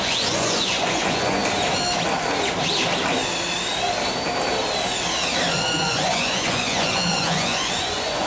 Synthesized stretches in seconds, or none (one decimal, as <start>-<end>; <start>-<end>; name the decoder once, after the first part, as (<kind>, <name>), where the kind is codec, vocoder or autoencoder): 0.0-1.4 (vocoder, Vocos); 5.5-8.3